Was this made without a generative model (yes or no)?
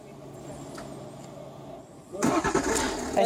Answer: yes